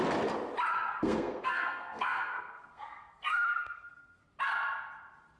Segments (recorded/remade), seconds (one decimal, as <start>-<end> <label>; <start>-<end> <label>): 0.0-1.0 recorded; 1.0-4.2 remade; 4.2-5.4 recorded